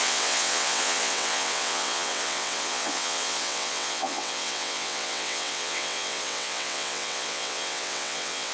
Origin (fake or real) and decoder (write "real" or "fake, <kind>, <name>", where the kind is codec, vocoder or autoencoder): fake, vocoder, WaveNeXt